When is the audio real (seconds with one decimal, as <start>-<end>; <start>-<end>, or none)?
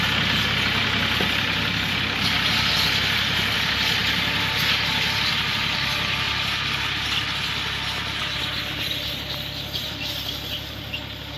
0.0-11.4